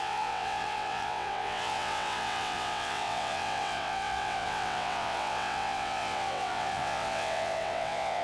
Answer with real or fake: fake